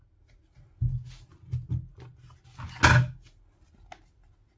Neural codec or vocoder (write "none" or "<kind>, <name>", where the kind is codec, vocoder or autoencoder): none